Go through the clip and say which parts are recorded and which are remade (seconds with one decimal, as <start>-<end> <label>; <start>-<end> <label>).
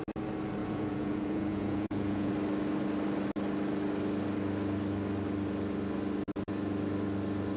0.0-0.6 recorded; 0.6-2.3 remade; 2.3-7.6 recorded